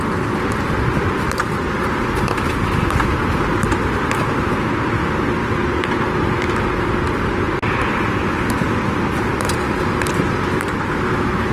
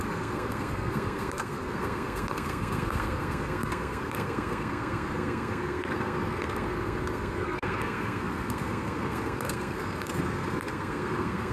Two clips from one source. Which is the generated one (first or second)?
second